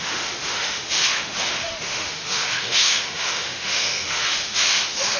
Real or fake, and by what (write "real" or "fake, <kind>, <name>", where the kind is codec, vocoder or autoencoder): fake, autoencoder, DAC-VAE